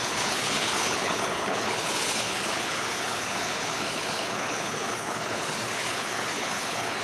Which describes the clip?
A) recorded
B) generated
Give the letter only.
B